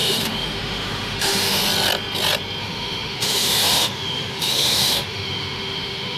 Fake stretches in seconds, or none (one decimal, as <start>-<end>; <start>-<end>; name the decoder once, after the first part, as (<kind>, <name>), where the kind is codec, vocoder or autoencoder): 0.0-1.6 (autoencoder, DAC-VAE); 2.6-6.2